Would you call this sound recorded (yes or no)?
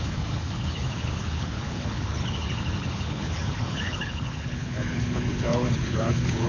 no